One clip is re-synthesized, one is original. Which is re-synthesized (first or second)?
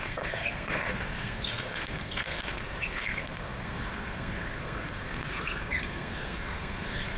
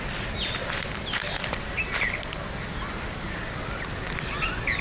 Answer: first